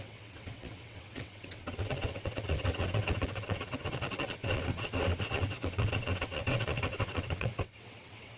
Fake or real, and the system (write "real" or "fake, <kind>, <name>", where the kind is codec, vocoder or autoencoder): fake, vocoder, WaveNeXt